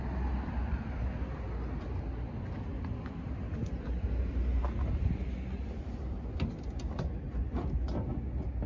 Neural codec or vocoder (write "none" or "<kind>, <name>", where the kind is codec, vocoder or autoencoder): none